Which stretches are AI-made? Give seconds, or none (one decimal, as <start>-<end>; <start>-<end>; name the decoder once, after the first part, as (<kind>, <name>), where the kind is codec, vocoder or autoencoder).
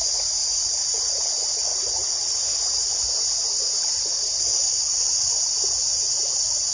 none